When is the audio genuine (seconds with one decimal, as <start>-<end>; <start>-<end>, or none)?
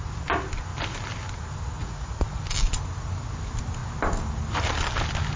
0.0-1.8; 2.4-5.4